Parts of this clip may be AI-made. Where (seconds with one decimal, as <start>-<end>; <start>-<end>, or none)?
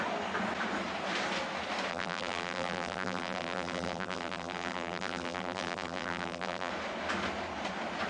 1.9-6.7